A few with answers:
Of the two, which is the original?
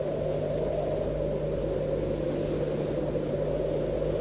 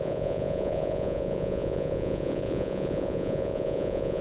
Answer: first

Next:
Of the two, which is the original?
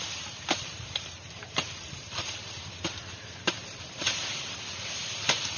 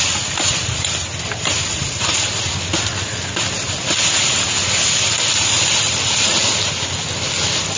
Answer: second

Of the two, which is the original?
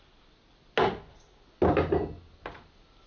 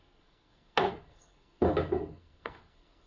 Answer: first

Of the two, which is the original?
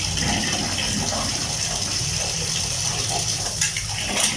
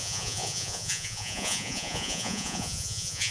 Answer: first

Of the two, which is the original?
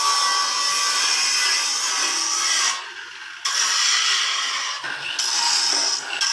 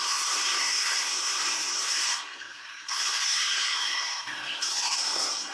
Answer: first